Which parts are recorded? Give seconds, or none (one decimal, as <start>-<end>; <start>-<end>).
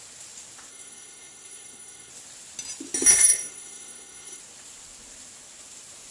0.0-0.7; 2.1-3.1; 4.4-6.1